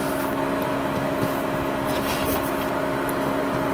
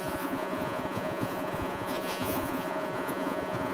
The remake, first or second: second